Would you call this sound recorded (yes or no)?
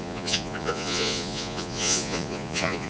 no